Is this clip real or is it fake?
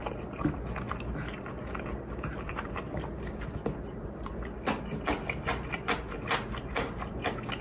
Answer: real